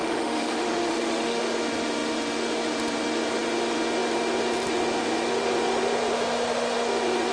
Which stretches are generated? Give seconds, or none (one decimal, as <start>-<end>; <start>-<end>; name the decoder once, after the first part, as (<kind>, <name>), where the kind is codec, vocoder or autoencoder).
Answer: 0.0-1.4 (autoencoder, DAC-VAE)